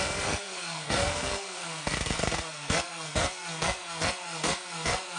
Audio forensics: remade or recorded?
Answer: remade